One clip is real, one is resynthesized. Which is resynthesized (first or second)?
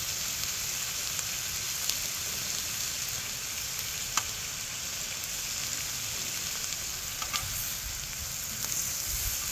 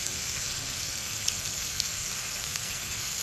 second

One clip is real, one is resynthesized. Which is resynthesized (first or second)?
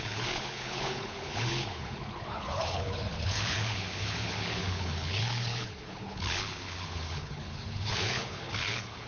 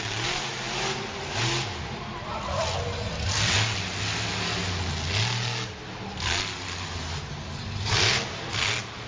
first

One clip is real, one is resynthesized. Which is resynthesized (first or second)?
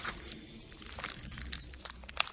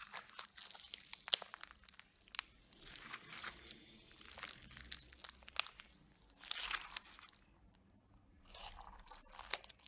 first